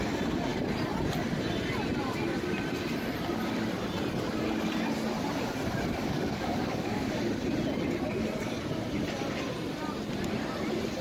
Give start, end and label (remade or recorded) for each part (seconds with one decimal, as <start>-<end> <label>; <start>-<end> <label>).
0.0-6.0 recorded; 6.0-7.2 remade; 7.2-11.0 recorded

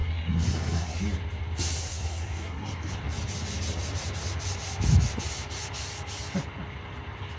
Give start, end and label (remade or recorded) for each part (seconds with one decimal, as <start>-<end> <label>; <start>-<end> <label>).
0.0-1.0 remade; 1.0-1.9 recorded; 1.9-2.9 remade; 2.9-7.4 recorded